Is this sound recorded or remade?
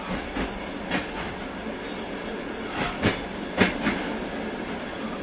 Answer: recorded